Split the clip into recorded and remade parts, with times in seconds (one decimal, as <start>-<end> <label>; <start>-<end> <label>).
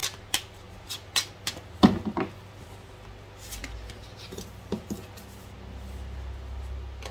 0.0-7.1 recorded